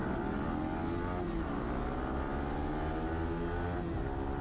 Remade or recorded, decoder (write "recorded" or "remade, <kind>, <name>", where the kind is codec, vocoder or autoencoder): recorded